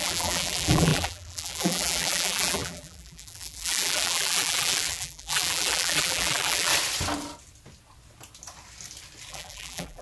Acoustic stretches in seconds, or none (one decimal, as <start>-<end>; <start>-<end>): 6.7-9.3